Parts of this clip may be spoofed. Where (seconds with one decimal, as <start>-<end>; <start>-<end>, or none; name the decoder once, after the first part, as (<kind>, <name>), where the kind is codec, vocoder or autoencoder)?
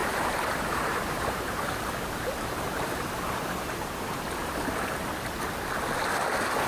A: 0.0-4.0 (vocoder, BigVGAN v2)